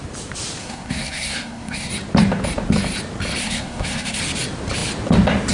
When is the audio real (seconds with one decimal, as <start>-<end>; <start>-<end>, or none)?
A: 0.0-0.6; 1.9-3.4; 4.2-5.5